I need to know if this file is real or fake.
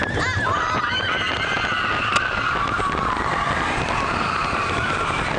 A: real